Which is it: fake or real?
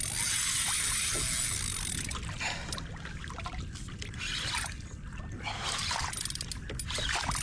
real